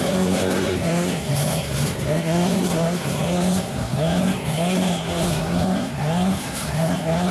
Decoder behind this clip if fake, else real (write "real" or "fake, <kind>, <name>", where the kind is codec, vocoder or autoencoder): fake, codec, SNAC